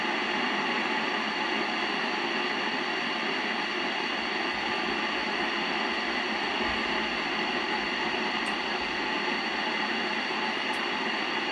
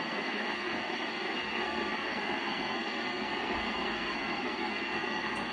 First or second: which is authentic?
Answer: first